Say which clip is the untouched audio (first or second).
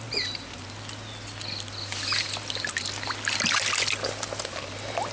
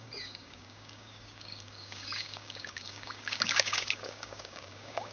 first